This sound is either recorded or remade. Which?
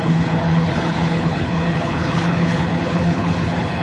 remade